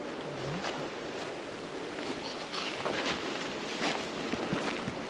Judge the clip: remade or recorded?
recorded